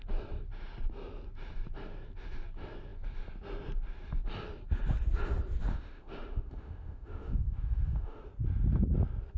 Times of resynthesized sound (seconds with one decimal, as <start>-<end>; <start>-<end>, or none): 5.7-8.2